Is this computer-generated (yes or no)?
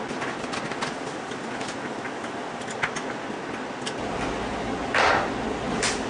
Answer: no